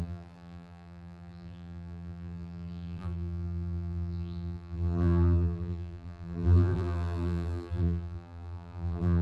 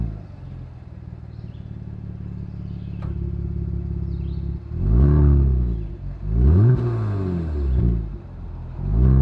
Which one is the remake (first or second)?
first